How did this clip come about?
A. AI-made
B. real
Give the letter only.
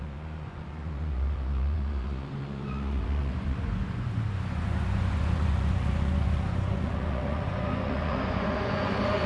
A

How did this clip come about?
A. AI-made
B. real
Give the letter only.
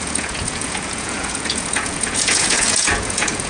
A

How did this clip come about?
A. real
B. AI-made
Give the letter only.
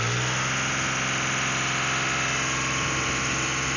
A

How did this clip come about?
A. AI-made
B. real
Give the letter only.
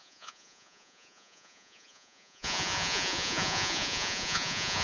A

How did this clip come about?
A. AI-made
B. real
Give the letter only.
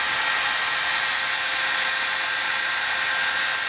B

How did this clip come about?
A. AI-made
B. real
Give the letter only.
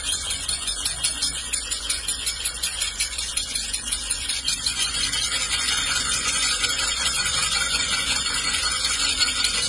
A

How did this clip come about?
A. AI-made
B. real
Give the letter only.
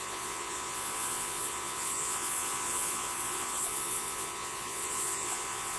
A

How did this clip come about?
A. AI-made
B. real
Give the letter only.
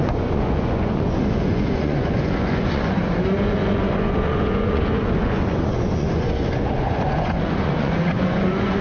A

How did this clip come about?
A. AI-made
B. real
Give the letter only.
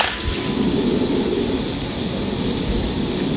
B